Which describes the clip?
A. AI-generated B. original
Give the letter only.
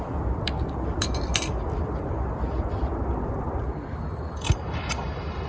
A